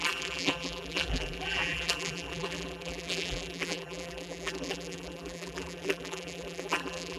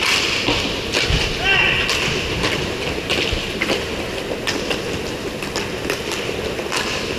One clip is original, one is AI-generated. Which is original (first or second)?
second